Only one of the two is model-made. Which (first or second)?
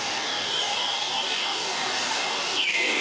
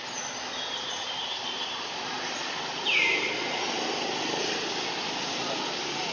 first